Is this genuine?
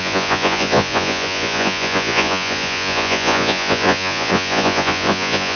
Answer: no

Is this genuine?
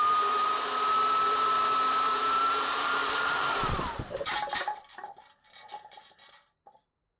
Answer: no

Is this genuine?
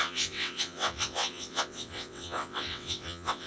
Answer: no